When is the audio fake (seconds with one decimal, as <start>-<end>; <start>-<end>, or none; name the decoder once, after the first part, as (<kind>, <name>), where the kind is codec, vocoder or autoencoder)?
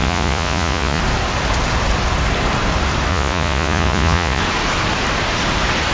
0.0-1.0 (vocoder, Vocos); 3.1-4.4